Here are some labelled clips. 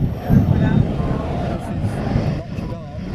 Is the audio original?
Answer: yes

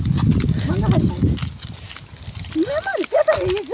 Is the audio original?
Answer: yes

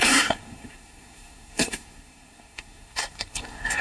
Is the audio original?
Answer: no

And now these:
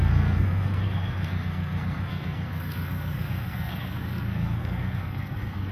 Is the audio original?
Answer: no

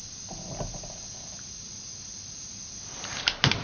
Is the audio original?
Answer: yes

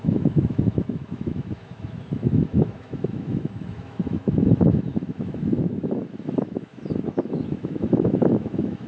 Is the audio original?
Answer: no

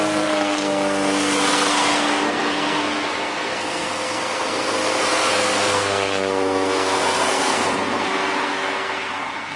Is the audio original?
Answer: no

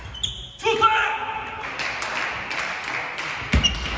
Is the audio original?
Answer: yes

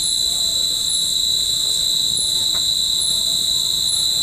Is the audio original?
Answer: yes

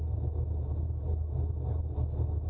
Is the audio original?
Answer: yes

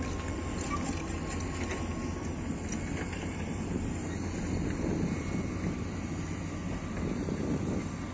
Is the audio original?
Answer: yes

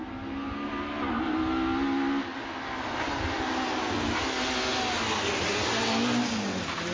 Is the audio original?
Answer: yes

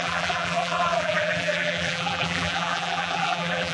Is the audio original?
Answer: no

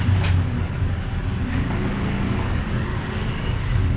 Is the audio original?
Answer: no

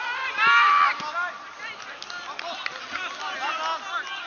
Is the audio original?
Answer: yes